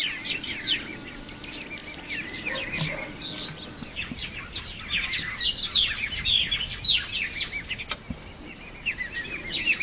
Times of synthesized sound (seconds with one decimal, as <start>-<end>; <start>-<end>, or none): none

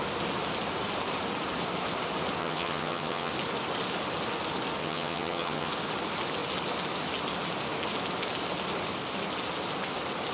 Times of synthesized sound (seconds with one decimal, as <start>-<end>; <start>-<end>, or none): 2.4-3.3; 4.8-5.7

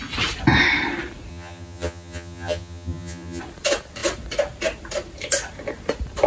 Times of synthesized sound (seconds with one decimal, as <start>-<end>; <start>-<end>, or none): 1.3-3.4

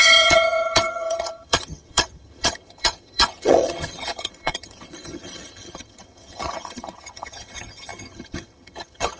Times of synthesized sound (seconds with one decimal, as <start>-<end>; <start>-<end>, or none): 0.0-9.2

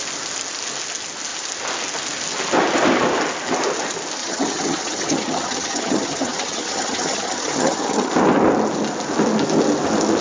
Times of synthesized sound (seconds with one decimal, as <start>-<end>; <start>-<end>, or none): 4.2-8.1

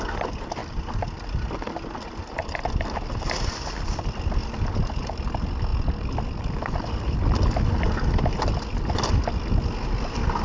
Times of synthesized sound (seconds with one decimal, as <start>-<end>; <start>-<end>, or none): none

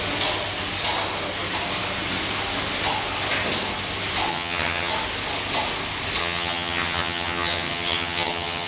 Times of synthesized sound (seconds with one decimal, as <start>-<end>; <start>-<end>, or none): 4.3-4.9; 6.2-8.7

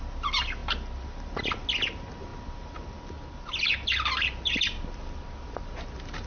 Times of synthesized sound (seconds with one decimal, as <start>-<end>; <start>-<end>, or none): none